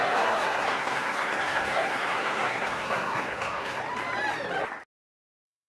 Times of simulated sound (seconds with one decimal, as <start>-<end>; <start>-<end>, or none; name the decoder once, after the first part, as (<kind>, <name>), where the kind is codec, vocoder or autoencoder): 0.0-3.8 (codec, SNAC); 5.2-5.7